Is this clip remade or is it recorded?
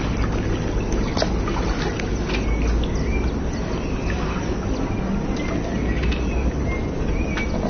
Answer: recorded